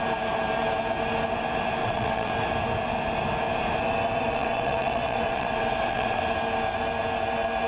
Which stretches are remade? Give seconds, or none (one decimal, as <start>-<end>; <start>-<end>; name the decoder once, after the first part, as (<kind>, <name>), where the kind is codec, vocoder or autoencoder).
1.8-2.3 (vocoder, WaveNeXt); 4.3-6.2